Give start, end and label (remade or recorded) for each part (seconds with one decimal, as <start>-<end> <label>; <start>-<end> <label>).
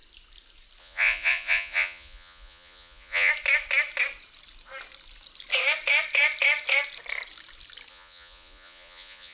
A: 0.0-0.8 recorded; 0.8-3.3 remade; 3.3-7.9 recorded; 7.9-9.3 remade